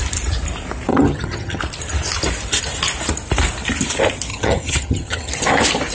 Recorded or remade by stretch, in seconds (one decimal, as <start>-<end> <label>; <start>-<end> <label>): 0.0-0.9 recorded; 0.9-1.6 remade; 1.6-4.3 recorded; 4.3-5.3 remade; 5.3-5.9 recorded

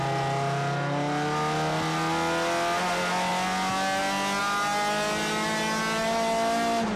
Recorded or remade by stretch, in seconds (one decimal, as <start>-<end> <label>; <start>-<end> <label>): 0.0-7.0 recorded

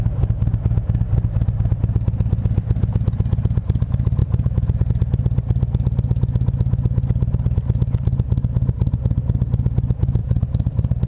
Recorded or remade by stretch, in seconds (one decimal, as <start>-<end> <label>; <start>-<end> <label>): 0.0-4.2 recorded; 4.2-4.9 remade; 4.9-10.2 recorded; 10.2-11.1 remade

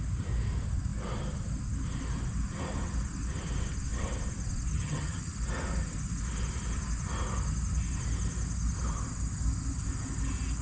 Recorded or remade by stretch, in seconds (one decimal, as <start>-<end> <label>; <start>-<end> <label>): 0.0-4.7 recorded; 4.7-5.3 remade; 5.3-10.6 recorded

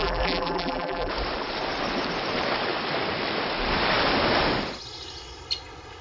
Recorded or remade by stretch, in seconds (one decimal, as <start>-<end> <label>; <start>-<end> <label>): 0.0-1.1 remade; 1.1-6.0 recorded

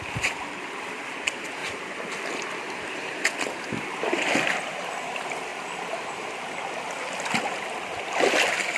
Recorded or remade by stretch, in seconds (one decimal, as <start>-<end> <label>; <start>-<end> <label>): 0.0-8.8 recorded

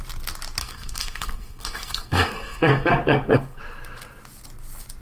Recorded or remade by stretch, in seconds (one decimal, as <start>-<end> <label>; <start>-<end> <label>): 0.0-0.6 recorded; 0.6-3.6 remade; 3.6-5.0 recorded